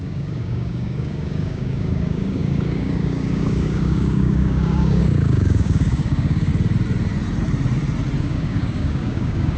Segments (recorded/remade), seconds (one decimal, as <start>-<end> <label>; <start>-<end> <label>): 0.0-6.5 remade; 6.5-8.2 recorded; 8.2-9.6 remade